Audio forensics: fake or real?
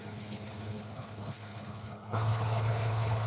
fake